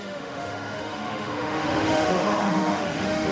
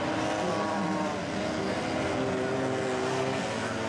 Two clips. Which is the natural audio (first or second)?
second